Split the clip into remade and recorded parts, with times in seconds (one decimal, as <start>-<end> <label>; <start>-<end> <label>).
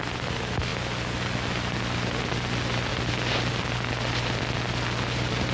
0.0-5.5 recorded